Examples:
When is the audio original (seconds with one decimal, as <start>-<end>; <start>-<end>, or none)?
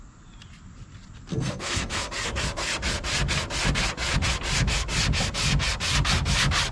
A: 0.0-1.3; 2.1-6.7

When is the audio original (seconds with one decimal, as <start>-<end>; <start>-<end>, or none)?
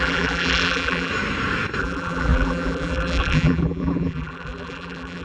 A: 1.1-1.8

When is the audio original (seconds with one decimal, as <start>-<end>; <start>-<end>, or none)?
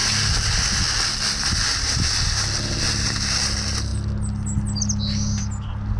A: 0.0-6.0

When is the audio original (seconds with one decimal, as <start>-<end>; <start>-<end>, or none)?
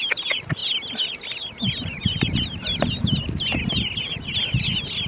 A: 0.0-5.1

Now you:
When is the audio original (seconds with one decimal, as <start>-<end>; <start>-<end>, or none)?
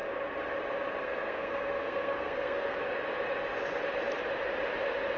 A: 0.0-1.0; 2.8-5.2